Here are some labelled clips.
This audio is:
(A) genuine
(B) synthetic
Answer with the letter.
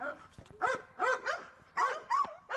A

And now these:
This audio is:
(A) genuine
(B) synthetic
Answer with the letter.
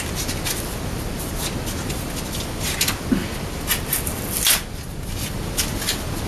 A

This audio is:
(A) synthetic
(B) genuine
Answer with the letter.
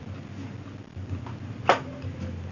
B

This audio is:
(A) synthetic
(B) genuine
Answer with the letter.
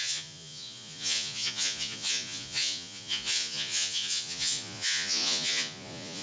A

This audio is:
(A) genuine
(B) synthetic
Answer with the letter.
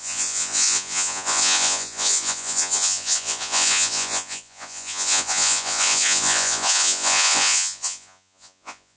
B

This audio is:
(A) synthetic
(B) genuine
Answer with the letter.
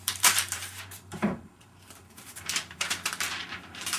A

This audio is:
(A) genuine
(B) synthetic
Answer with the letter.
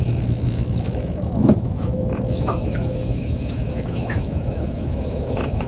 B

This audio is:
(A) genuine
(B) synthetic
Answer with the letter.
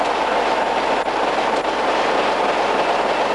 A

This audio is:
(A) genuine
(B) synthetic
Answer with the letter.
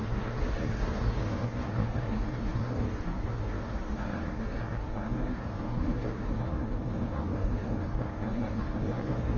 B